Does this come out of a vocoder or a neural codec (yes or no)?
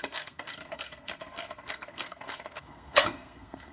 yes